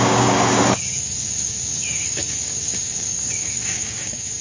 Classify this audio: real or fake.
fake